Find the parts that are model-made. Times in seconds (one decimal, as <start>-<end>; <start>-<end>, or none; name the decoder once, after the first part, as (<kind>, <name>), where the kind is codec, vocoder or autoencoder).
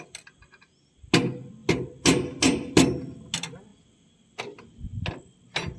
none